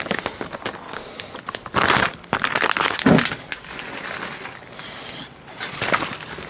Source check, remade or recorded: recorded